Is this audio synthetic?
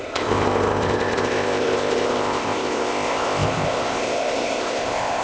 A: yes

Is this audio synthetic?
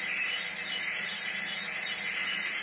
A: no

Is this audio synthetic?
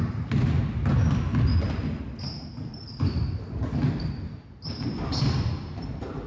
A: no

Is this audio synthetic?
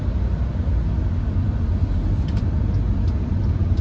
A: no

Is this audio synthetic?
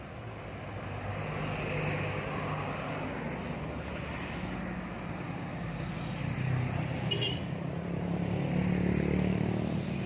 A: no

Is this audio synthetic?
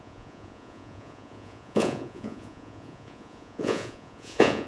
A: yes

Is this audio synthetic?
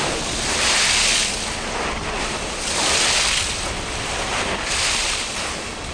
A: yes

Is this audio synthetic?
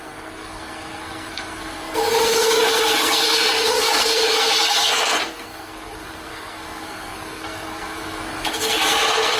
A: yes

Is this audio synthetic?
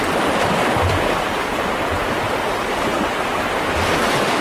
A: no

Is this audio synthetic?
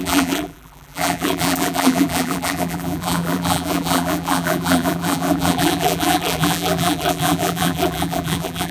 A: yes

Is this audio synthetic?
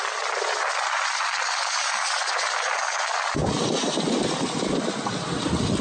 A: no